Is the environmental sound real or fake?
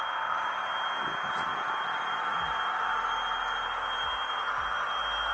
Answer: real